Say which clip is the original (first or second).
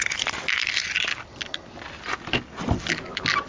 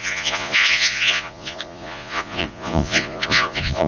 first